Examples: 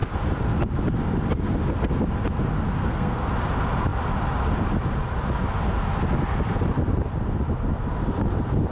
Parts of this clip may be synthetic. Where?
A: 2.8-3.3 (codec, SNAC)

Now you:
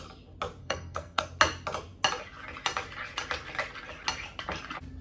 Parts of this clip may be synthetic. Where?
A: 0.6-1.2 (codec, SNAC)

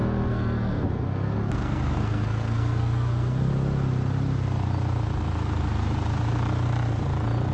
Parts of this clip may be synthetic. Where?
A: 0.0-3.5 (codec, SNAC)

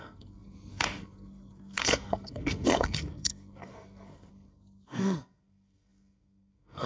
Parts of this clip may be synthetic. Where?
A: 0.0-6.9 (codec, SNAC)

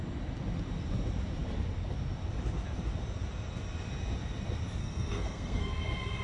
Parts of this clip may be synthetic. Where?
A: 4.8-5.7 (codec, SNAC)

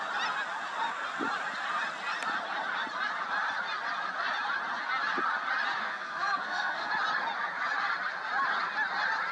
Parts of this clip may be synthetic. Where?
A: 5.8-6.9 (codec, SNAC)

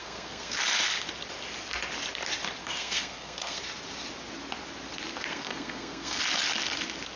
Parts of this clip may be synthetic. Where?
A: 0.0-0.6 (codec, SNAC); 2.6-3.6; 5.3-6.2

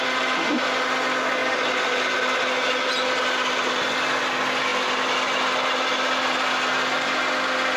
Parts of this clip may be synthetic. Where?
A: none